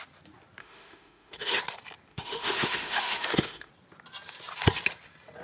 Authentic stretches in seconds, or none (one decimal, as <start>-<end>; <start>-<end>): 0.0-0.6; 1.6-2.1; 3.7-5.4